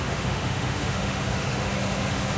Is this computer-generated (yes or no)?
yes